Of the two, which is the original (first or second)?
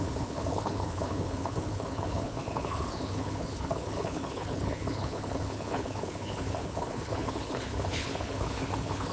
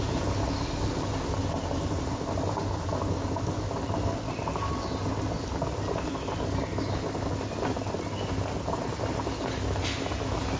second